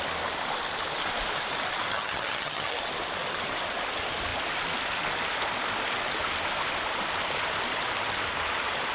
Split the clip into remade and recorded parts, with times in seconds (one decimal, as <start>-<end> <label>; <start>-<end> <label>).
0.0-1.9 recorded; 1.9-2.8 remade; 2.8-8.9 recorded